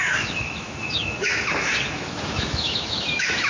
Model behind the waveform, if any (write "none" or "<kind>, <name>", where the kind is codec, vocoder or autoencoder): autoencoder, DAC-VAE